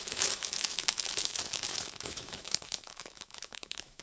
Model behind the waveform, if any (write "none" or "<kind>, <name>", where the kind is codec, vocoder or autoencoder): autoencoder, DAC-VAE